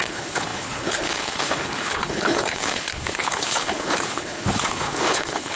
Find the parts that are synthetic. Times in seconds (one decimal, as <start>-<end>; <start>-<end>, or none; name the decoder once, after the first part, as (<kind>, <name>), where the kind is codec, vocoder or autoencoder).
0.0-5.6 (codec, HILCodec)